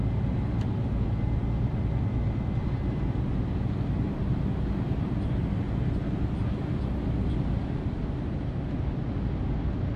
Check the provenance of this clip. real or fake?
real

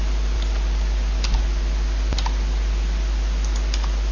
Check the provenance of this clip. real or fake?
real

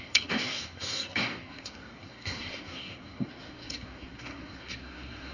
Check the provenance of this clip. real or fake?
fake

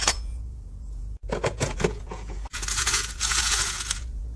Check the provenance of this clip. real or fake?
fake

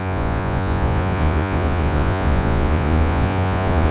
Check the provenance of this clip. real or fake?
fake